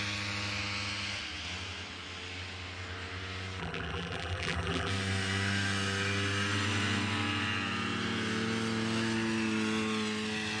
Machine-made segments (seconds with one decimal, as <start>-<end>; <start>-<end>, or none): 3.6-4.9